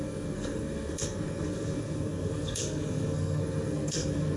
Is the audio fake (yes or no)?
yes